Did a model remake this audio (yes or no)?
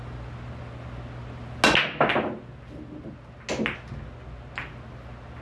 no